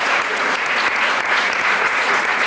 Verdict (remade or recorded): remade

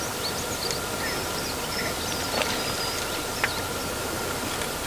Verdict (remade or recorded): recorded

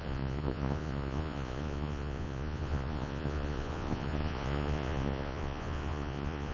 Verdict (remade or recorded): remade